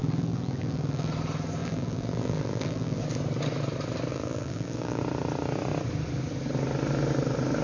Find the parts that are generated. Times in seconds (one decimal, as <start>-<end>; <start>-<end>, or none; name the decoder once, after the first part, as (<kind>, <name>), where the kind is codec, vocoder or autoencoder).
0.0-1.1 (vocoder, BigVGAN v2); 1.6-3.0; 4.1-5.0